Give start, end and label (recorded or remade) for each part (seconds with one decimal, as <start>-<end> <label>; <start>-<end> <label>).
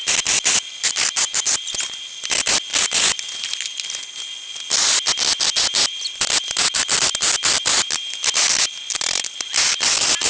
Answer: 0.0-10.3 recorded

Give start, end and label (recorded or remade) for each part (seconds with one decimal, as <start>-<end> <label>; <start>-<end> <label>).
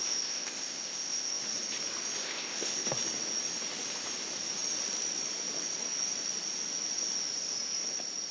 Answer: 0.0-1.4 remade; 1.4-2.2 recorded; 2.2-2.9 remade; 2.9-8.3 recorded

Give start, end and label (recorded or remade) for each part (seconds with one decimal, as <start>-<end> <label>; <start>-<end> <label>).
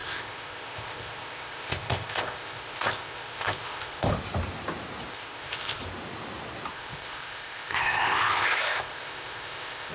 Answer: 0.0-4.1 remade; 4.1-5.1 recorded; 5.1-5.8 remade; 5.8-6.7 recorded; 6.7-9.9 remade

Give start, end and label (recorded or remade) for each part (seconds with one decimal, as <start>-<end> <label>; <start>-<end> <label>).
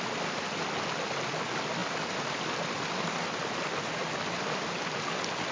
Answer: 0.0-5.5 recorded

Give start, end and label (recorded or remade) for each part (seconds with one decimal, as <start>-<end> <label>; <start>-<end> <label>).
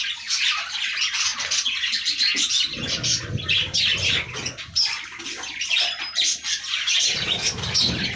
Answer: 0.0-8.2 recorded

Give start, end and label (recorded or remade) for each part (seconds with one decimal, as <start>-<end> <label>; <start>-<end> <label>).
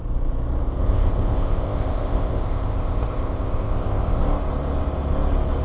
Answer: 0.0-0.8 recorded; 0.8-4.2 remade; 4.2-5.6 recorded